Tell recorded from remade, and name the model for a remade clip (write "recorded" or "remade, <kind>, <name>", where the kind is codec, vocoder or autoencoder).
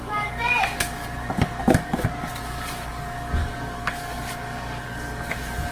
remade, codec, DAC